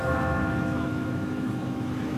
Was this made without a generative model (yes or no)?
no